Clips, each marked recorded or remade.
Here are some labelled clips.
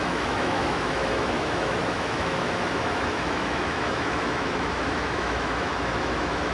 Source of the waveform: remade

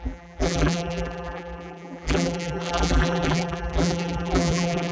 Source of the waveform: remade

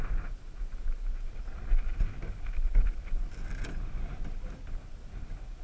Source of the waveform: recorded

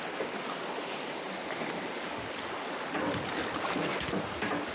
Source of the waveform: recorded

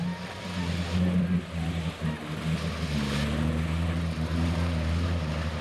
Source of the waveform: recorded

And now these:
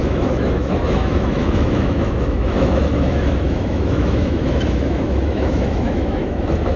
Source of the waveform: remade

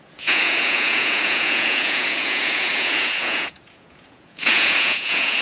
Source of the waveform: remade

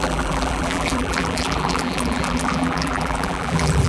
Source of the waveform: remade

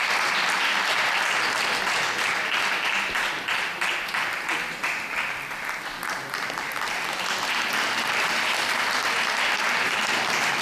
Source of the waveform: recorded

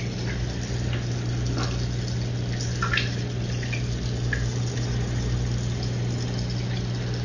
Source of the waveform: recorded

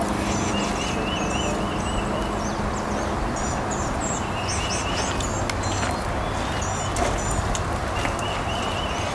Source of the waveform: recorded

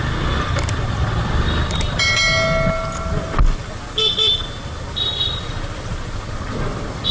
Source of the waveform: recorded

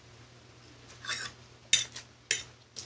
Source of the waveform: recorded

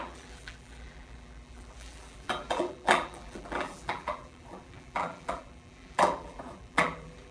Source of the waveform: remade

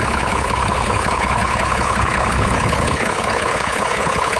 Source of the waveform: remade